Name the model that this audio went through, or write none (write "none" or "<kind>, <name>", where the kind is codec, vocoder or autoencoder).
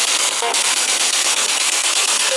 codec, SNAC